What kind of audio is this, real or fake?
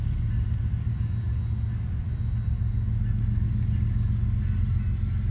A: real